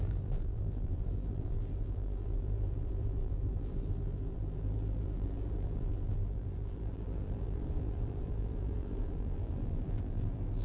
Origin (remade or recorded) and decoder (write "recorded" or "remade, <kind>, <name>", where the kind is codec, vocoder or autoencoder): remade, vocoder, BigVGAN v2